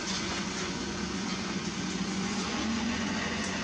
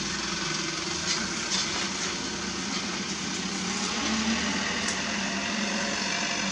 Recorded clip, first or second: second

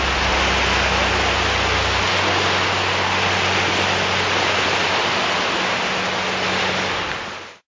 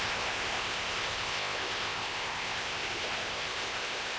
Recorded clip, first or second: first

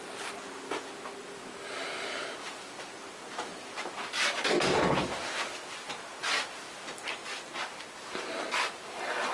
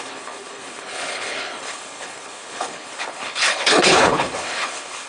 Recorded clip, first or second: first